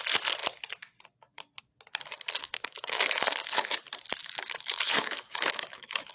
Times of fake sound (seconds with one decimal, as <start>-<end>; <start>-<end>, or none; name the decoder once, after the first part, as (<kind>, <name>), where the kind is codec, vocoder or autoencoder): 2.4-3.8 (autoencoder, DAC-VAE); 4.2-6.1